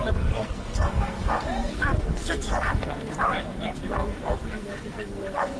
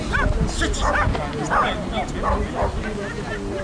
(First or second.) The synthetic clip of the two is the first